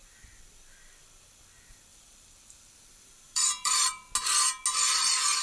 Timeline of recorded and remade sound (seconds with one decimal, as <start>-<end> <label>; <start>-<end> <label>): 0.0-1.9 recorded; 1.9-4.1 remade; 4.1-5.4 recorded